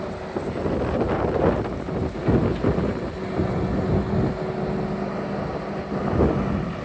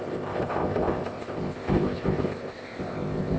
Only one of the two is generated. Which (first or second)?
second